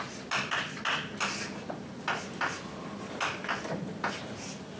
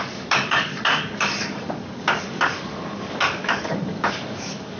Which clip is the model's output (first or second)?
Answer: second